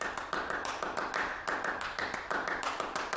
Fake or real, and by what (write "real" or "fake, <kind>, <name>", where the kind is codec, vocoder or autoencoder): real